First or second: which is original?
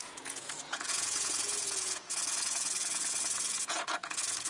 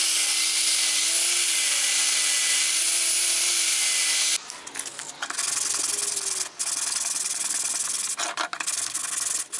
second